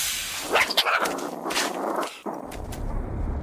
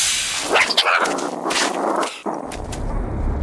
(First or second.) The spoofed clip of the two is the first